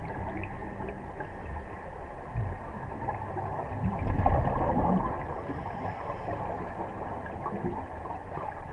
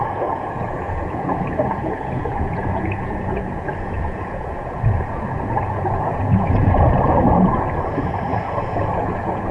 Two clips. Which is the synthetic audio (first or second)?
second